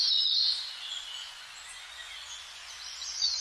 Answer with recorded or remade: remade